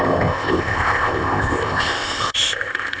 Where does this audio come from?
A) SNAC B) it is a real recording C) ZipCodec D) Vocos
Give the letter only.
C